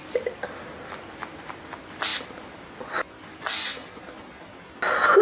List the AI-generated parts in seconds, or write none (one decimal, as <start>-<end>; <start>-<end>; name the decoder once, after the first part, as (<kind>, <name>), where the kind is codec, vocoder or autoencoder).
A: none